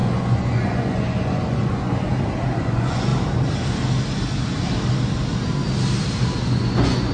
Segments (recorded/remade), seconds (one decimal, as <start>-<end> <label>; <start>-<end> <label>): 0.0-2.1 remade; 2.1-2.6 recorded; 2.6-3.1 remade; 3.1-6.4 recorded; 6.4-7.1 remade